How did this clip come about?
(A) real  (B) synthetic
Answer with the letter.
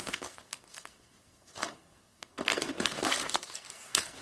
B